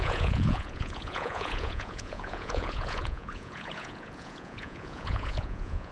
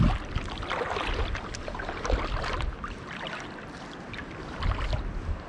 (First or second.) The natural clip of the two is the second